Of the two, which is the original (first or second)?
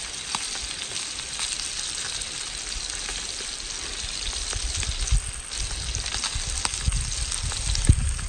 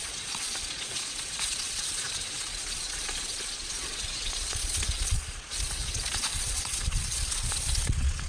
first